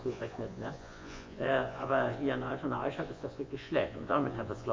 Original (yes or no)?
no